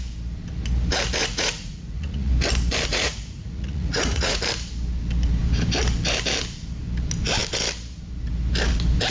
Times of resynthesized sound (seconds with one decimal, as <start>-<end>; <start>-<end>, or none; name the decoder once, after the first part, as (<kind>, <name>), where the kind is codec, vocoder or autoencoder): 1.2-2.3 (vocoder, Vocos); 2.9-4.4